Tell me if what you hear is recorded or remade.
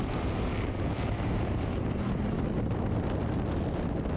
recorded